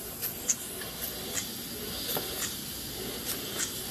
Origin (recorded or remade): recorded